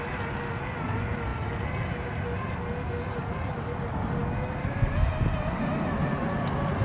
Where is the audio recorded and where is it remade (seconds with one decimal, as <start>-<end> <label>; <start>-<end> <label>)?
0.0-6.8 recorded